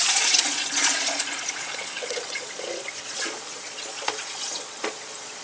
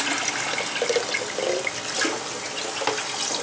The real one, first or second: second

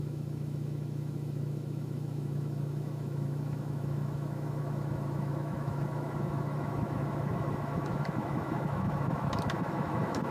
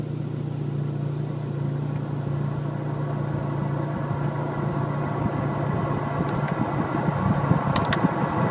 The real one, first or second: second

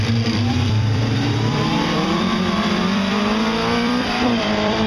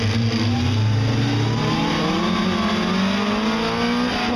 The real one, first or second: second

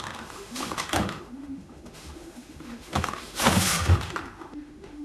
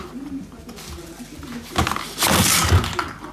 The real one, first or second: second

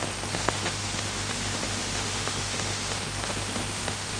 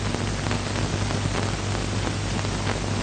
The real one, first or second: second